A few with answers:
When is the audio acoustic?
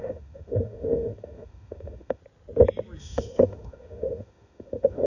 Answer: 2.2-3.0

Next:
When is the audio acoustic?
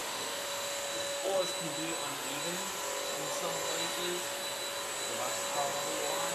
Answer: 1.4-6.3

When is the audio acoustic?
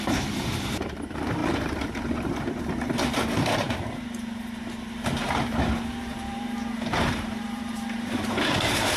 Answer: none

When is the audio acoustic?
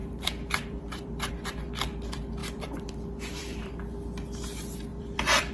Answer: 1.3-2.4; 3.8-4.9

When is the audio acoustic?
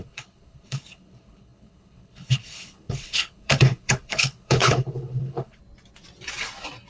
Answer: 5.6-6.9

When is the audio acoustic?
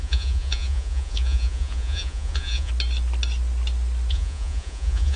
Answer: 2.7-4.1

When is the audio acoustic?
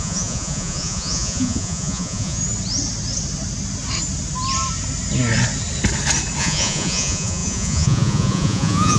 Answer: 2.4-6.4